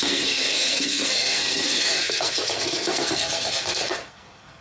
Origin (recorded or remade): remade